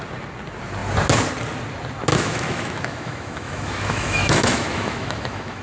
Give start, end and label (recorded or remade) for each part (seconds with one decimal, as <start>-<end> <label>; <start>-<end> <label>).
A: 0.0-2.1 recorded; 2.1-5.6 remade